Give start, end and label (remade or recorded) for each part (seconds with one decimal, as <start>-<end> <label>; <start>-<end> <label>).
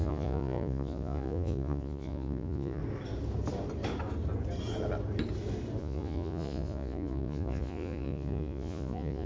0.0-2.8 remade; 2.8-5.8 recorded; 5.8-9.3 remade